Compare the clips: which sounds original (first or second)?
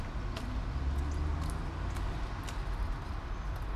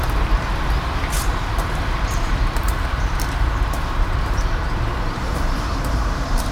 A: first